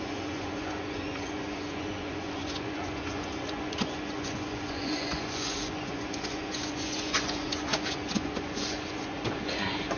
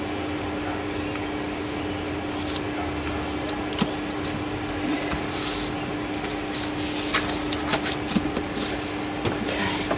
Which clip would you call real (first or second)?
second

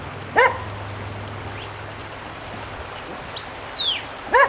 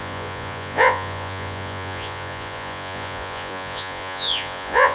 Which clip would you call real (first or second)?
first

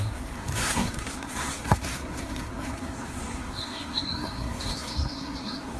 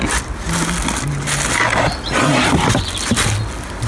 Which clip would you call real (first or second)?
second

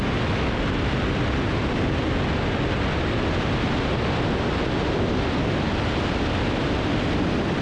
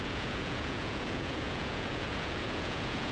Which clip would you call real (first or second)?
first